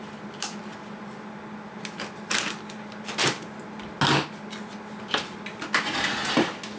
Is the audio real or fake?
real